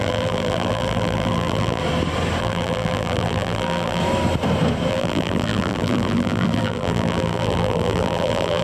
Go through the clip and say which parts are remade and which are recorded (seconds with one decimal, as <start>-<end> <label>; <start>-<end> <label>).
0.0-1.8 remade; 1.8-2.4 recorded; 2.4-4.0 remade; 4.0-4.9 recorded; 4.9-8.6 remade